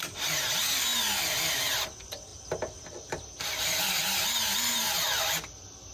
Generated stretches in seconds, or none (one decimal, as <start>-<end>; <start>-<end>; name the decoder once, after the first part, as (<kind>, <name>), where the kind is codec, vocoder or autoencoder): 2.3-4.0 (vocoder, BigVGAN v2)